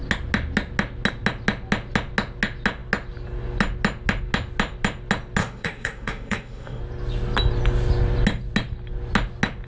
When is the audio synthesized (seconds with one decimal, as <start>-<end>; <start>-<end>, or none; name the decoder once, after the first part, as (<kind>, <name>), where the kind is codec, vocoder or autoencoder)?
5.4-6.8 (autoencoder, DAC-VAE)